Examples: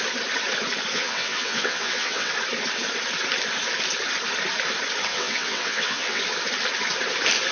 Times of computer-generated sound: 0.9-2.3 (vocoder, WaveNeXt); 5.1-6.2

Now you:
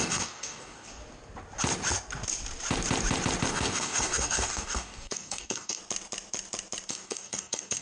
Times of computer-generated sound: 0.0-1.0 (codec, DAC); 3.5-5.8; 6.9-7.8